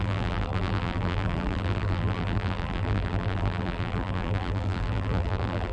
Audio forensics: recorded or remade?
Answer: remade